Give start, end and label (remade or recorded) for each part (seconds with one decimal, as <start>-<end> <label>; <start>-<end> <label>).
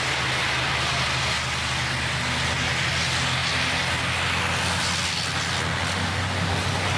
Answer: 0.0-7.0 recorded